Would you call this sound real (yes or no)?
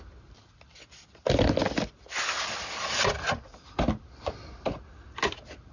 yes